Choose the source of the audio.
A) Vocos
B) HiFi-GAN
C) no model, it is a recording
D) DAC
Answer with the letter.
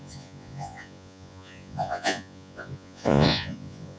A